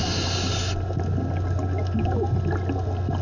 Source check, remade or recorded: recorded